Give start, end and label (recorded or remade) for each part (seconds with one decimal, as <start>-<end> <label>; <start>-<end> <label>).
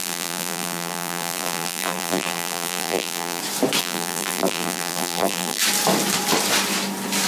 0.0-3.4 remade; 3.4-3.8 recorded; 3.8-5.6 remade; 5.6-7.3 recorded